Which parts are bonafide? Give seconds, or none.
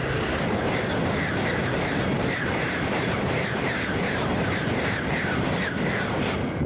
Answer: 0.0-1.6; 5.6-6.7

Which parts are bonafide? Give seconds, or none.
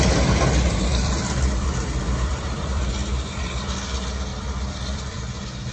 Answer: 0.0-0.9; 2.9-4.3; 5.2-5.7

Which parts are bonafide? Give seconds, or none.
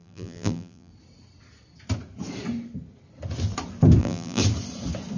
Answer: 0.9-4.0; 4.4-5.2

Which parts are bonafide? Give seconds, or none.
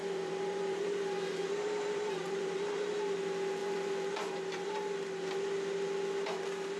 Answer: 2.9-3.6; 4.7-6.8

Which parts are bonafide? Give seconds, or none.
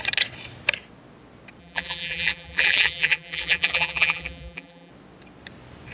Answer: 0.0-1.6; 4.9-5.9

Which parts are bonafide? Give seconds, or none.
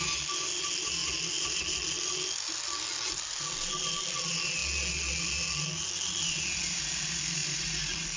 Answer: 0.0-8.2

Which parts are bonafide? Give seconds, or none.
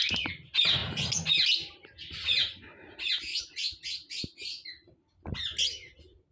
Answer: 0.0-6.3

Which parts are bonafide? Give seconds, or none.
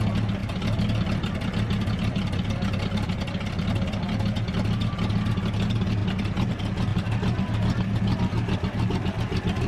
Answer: 0.0-0.4; 4.0-9.7